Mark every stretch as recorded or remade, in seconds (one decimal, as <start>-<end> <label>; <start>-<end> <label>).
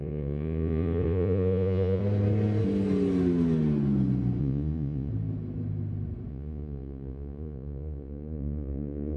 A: 0.0-2.0 remade; 2.0-4.4 recorded; 4.4-5.1 remade; 5.1-6.3 recorded; 6.3-9.2 remade